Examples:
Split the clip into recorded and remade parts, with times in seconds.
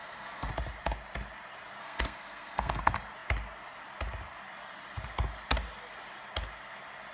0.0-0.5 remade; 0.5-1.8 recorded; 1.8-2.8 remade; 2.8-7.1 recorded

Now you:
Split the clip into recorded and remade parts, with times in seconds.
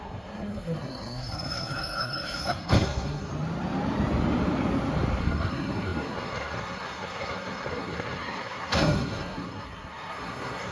0.0-3.3 remade; 3.3-5.2 recorded; 5.2-10.7 remade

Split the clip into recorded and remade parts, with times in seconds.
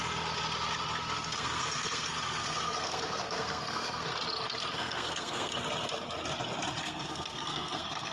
0.0-1.0 recorded; 1.0-4.1 remade; 4.1-4.7 recorded; 4.7-5.5 remade; 5.5-6.8 recorded; 6.8-8.1 remade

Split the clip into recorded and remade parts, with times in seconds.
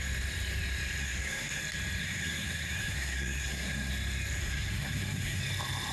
0.0-1.0 recorded; 1.0-1.6 remade; 1.6-2.0 recorded; 2.0-3.9 remade; 3.9-4.4 recorded; 4.4-5.4 remade; 5.4-5.9 recorded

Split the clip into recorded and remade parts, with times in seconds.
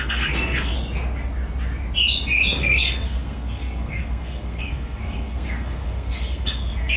0.0-0.7 remade; 0.7-2.6 recorded; 2.6-7.0 remade